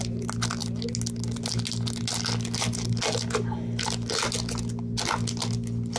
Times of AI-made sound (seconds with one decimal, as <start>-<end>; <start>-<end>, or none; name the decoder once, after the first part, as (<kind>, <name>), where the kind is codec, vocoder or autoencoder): none